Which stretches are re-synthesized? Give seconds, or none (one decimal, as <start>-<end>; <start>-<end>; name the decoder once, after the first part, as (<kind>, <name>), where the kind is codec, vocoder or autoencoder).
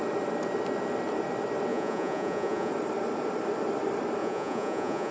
1.7-2.7 (vocoder, Vocos); 4.2-5.1